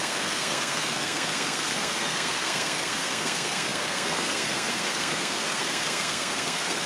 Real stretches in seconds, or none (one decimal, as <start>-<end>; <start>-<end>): none